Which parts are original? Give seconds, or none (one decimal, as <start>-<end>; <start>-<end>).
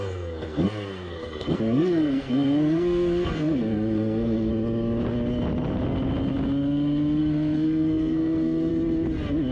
4.5-7.2; 8.7-9.5